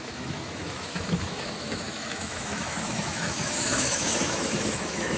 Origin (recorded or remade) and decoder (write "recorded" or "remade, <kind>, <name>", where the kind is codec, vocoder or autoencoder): remade, autoencoder, DAC-VAE